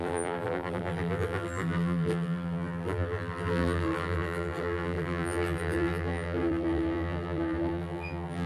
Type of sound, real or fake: fake